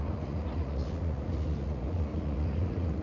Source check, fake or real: fake